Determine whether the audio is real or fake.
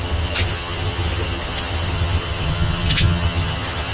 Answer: fake